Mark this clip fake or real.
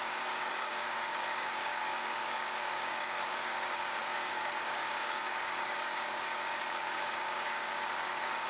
fake